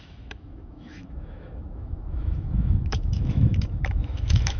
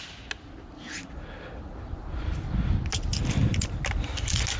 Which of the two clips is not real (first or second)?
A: first